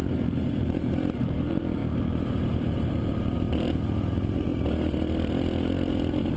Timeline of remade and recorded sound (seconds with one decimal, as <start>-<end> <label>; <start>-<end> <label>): 0.0-1.8 remade; 1.8-3.2 recorded; 3.2-4.5 remade; 4.5-6.4 recorded